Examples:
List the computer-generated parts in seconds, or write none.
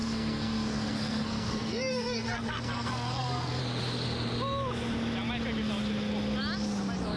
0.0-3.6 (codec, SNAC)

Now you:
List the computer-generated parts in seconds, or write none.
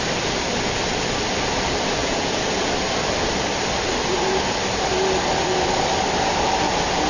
2.0-2.7 (vocoder, Vocos)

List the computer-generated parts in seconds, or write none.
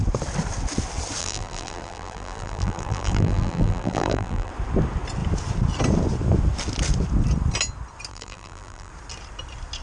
1.2-4.5 (vocoder, BigVGAN v2); 8.1-8.9